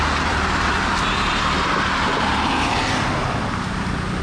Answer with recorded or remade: recorded